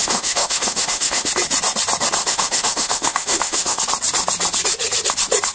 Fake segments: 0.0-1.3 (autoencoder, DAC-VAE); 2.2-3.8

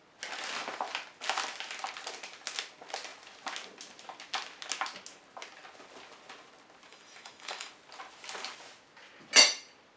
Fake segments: 6.9-7.7 (autoencoder, DAC-VAE)

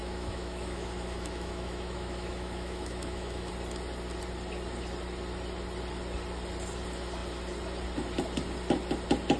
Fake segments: 0.0-3.5 (autoencoder, DAC-VAE)

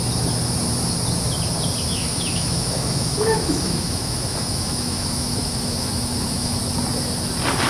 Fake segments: 2.0-6.6 (autoencoder, DAC-VAE)

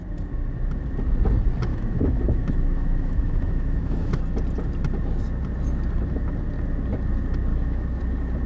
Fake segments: 1.7-4.2 (autoencoder, DAC-VAE); 7.5-8.0

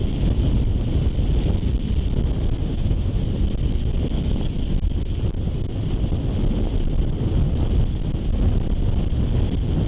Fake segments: 2.6-3.2 (autoencoder, DAC-VAE)

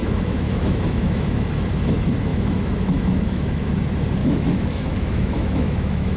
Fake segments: 0.0-1.5 (autoencoder, DAC-VAE); 2.3-3.7; 4.2-6.2

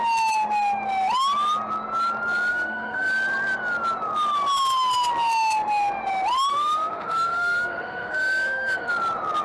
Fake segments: 2.5-3.1 (autoencoder, DAC-VAE); 6.5-8.9